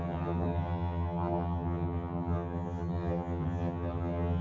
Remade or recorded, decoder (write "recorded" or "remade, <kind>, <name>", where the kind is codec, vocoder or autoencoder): remade, vocoder, HiFi-GAN